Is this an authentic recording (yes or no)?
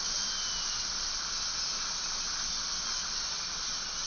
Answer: yes